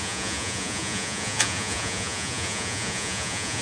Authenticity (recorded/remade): remade